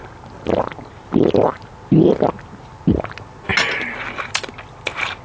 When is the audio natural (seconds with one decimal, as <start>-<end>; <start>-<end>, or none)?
0.0-5.2